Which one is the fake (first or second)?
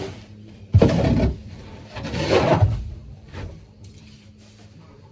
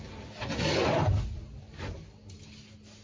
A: first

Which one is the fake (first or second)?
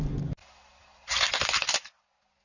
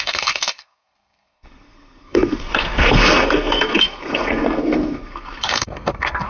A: second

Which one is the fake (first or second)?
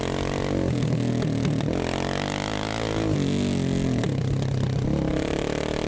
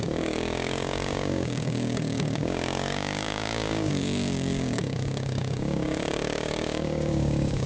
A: second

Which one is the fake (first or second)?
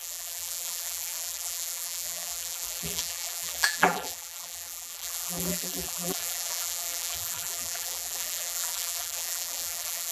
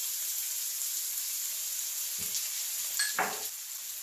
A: first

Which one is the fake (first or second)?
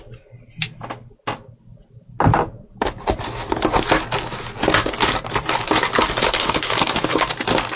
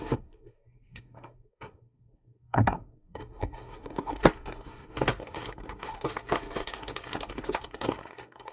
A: second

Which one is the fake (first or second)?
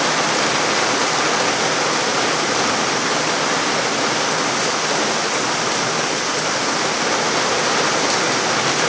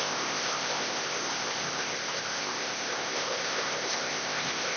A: second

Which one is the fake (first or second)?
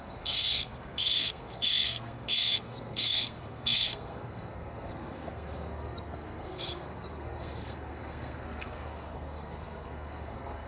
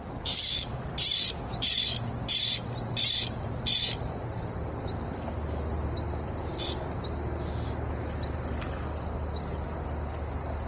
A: first